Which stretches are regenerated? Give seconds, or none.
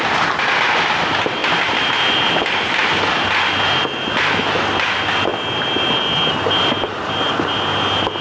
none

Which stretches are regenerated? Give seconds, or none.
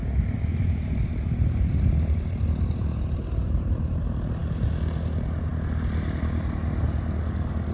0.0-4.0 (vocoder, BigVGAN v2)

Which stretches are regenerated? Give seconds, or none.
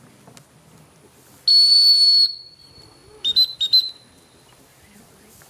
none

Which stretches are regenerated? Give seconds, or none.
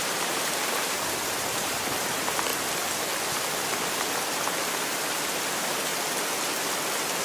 0.0-2.5 (vocoder, BigVGAN v2); 4.7-5.9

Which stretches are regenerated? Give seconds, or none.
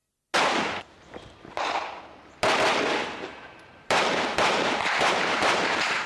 3.3-6.1 (vocoder, BigVGAN v2)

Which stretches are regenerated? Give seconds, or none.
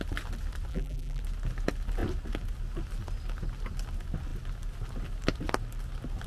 0.7-1.2 (vocoder, BigVGAN v2)